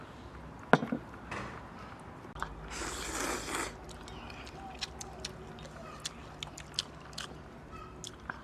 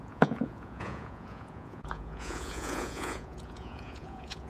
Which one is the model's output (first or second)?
second